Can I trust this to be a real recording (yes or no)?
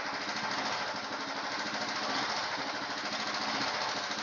yes